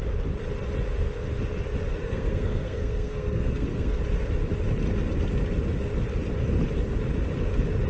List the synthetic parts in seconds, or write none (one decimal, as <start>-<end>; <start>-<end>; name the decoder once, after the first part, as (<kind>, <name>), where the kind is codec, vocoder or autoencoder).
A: 2.0-4.0 (codec, SNAC)